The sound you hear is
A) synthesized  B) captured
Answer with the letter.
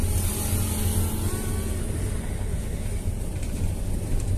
B